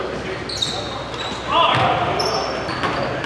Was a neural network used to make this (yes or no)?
no